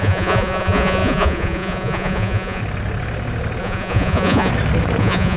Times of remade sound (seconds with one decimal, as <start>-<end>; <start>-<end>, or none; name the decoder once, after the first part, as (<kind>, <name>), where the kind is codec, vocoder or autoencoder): 0.0-2.6 (vocoder, Vocos); 3.6-4.5; 5.0-5.4